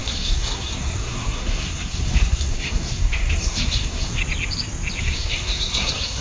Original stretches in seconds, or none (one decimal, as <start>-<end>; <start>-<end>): 4.2-5.0